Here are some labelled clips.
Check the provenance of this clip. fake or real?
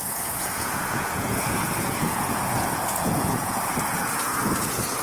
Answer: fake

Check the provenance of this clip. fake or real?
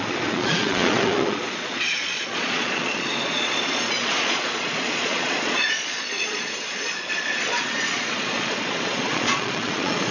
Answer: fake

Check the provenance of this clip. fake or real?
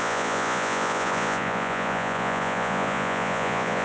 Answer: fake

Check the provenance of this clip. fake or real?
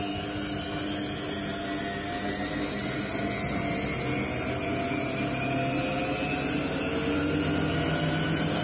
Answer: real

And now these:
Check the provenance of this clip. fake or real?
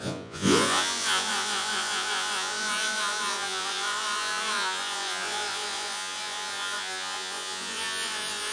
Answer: fake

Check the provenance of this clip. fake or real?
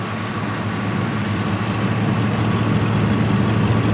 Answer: real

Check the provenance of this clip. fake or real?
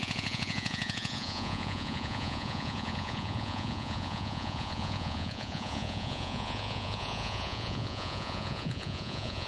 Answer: fake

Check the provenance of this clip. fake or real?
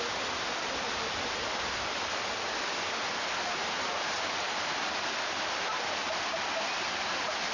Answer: real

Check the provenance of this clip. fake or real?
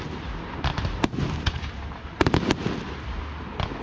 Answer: real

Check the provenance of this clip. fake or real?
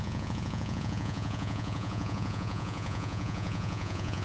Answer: fake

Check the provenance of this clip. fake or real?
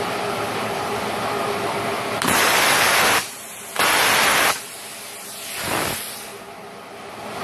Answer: real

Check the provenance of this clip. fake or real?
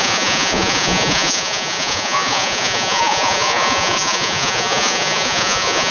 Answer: fake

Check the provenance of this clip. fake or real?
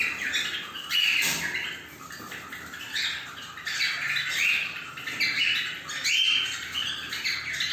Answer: real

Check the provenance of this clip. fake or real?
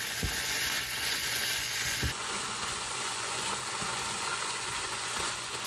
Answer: fake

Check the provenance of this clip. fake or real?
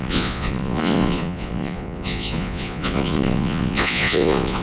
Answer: fake